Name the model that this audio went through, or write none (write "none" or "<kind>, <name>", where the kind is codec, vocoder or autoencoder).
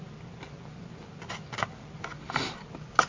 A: none